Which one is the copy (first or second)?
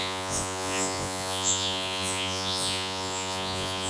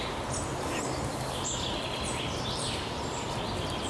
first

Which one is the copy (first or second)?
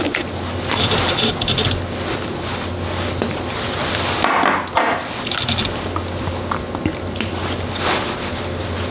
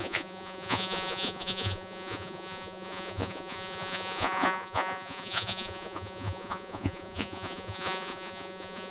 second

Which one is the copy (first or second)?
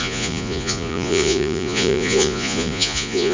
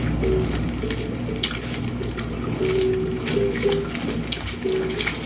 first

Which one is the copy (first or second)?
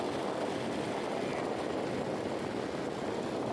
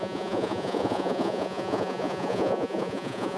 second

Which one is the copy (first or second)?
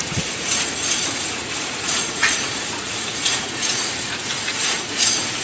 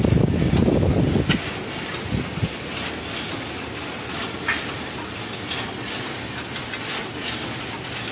first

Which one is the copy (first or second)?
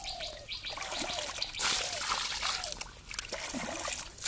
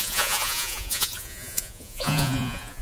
second